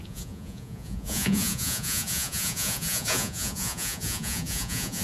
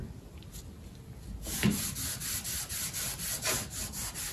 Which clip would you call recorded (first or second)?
second